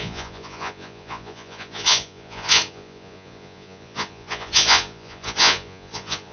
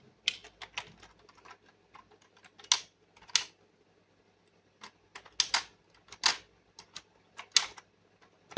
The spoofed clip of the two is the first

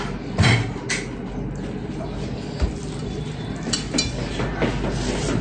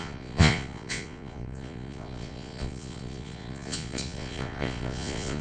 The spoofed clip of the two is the second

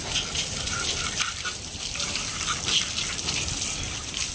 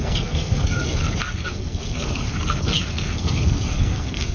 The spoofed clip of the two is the second